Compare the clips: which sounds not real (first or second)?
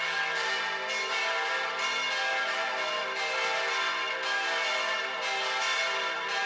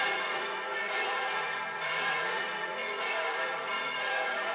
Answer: second